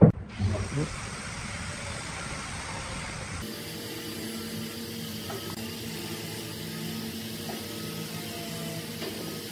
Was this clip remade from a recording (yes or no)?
no